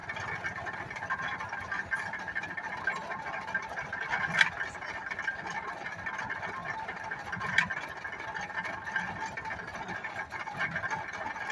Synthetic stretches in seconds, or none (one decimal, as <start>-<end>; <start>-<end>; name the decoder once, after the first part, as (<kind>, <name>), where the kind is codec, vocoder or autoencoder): none